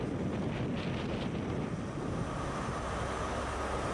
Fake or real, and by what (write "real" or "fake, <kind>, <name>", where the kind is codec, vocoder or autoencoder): real